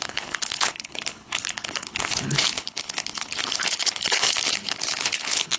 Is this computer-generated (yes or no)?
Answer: yes